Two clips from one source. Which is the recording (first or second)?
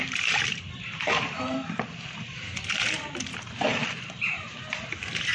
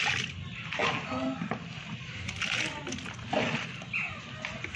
second